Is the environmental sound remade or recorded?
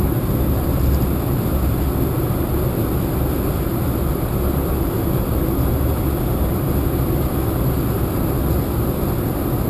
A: recorded